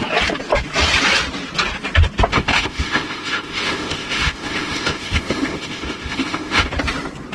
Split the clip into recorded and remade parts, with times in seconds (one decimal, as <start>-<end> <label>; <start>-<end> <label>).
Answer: 0.0-2.3 recorded; 2.3-6.7 remade; 6.7-7.3 recorded